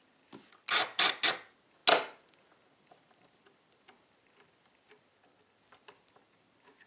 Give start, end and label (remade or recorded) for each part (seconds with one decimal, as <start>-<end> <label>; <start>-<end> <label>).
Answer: 0.0-6.9 recorded